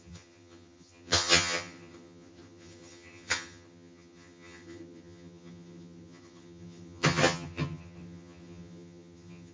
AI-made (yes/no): yes